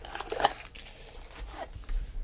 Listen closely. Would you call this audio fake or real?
real